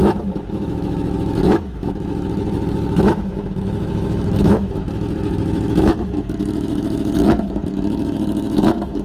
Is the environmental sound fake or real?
fake